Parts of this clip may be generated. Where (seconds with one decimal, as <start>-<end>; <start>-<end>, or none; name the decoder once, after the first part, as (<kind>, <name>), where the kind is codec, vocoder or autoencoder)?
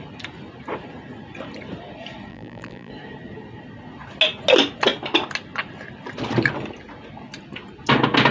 2.3-2.9 (vocoder, BigVGAN v2)